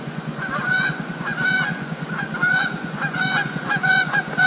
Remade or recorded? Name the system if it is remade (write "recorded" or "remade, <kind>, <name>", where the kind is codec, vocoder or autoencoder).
remade, vocoder, Vocos